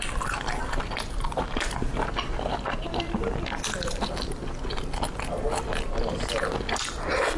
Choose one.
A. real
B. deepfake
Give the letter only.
A